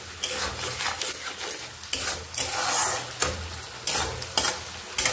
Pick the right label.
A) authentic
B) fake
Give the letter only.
A